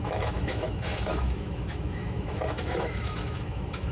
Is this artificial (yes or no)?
yes